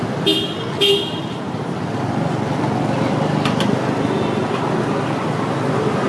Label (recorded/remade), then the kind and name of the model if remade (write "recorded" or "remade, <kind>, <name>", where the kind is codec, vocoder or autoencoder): recorded